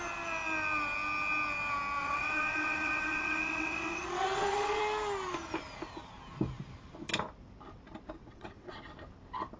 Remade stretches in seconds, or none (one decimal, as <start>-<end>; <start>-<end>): 2.0-4.8; 8.2-8.8

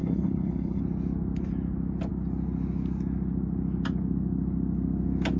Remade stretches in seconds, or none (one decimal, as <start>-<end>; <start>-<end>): 0.0-0.8